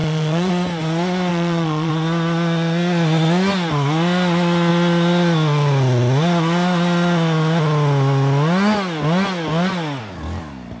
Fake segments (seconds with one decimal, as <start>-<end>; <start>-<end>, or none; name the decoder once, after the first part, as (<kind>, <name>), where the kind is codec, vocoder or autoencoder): 0.0-0.5 (vocoder, Vocos); 1.3-1.9